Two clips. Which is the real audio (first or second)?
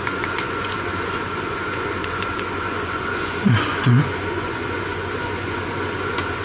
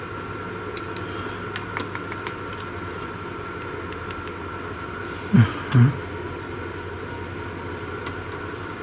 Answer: second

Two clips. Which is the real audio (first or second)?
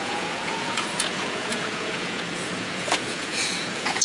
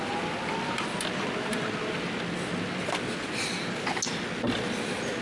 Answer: second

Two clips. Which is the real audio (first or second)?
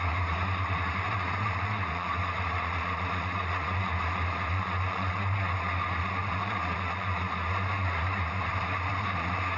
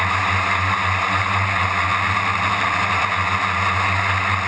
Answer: second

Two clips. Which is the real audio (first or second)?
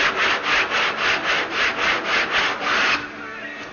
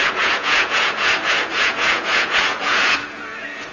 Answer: first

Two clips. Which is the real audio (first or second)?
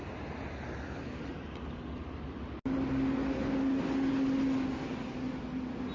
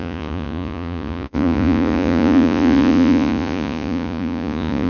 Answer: first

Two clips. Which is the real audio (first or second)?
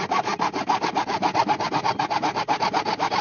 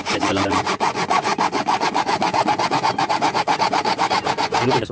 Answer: first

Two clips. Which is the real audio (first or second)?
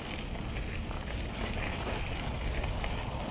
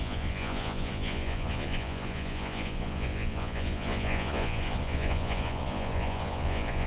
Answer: first